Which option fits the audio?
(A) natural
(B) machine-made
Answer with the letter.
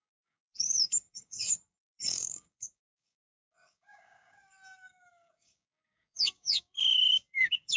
B